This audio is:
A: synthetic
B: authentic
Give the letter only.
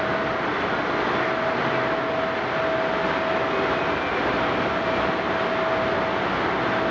B